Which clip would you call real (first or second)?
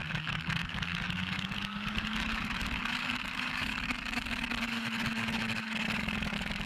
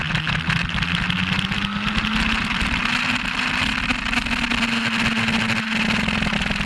second